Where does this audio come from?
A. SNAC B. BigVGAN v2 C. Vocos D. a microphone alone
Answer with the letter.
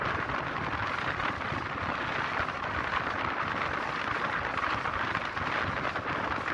D